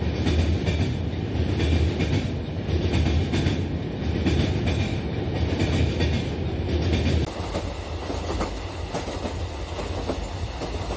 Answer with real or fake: real